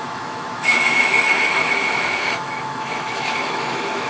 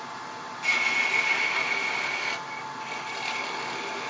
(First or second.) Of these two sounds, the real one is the second